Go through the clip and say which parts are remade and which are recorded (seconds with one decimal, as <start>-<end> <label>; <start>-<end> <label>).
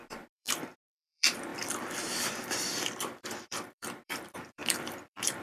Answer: 0.0-5.4 remade